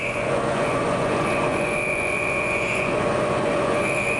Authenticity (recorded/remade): remade